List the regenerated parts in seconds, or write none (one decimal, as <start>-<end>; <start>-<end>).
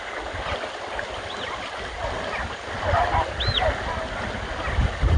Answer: none